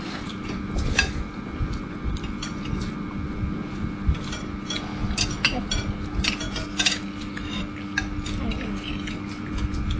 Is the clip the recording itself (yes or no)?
yes